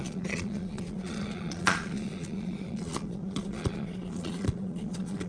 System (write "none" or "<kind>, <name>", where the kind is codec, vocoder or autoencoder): vocoder, Vocos